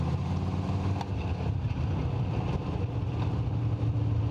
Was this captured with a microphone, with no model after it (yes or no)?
yes